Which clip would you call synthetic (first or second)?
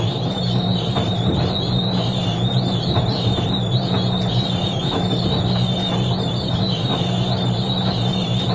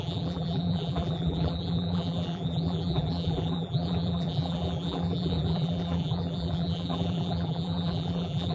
second